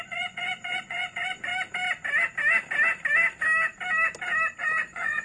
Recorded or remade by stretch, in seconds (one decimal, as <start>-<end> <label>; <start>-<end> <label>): 0.0-1.5 remade; 1.5-4.6 recorded; 4.6-5.2 remade